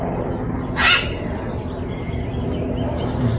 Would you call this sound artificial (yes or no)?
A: no